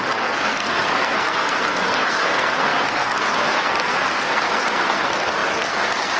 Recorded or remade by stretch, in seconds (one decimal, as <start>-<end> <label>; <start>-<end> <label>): 0.0-6.2 remade